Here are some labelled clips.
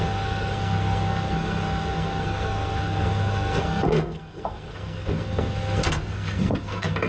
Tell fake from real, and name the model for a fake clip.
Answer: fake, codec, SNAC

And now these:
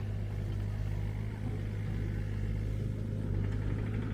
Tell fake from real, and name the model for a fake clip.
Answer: real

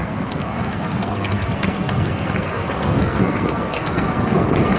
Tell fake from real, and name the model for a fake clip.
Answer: fake, codec, SNAC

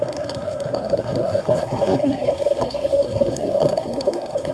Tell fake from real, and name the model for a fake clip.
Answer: fake, codec, SNAC